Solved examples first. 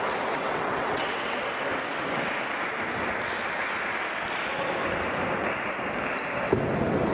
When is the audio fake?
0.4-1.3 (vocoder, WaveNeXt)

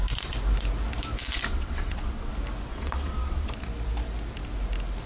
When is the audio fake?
1.5-2.3 (vocoder, WaveNeXt); 2.7-3.5

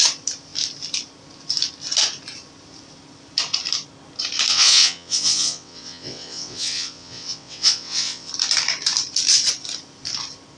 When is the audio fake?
4.5-8.3 (vocoder, WaveNeXt)

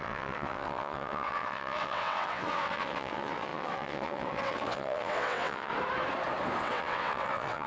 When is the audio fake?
0.0-5.7 (vocoder, WaveNeXt); 6.6-7.7

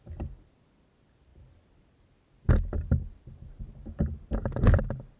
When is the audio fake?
none

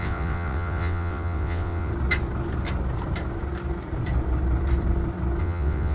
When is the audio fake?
0.0-1.9 (vocoder, WaveNeXt); 5.4-5.9

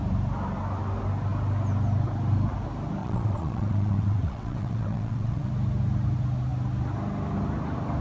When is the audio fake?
3.0-5.5 (vocoder, WaveNeXt)

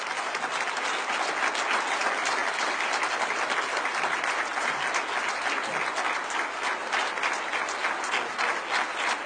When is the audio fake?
none